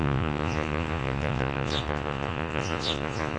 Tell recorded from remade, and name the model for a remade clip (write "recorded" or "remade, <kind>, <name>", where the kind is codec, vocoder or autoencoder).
remade, vocoder, Vocos